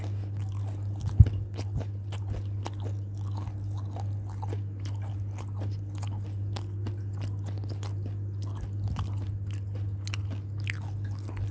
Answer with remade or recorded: recorded